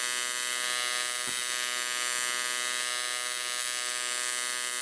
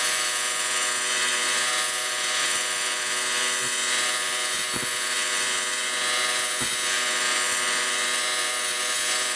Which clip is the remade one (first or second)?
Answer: second